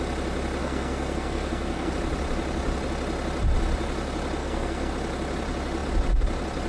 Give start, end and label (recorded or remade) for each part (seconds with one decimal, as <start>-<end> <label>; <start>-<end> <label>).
0.0-0.6 recorded; 0.6-1.9 remade; 1.9-4.4 recorded; 4.4-4.9 remade; 4.9-6.7 recorded